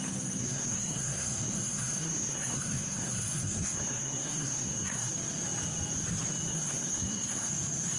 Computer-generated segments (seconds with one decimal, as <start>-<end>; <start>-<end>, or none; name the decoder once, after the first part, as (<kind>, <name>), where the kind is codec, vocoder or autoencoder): 0.4-5.1 (codec, SNAC); 6.5-7.5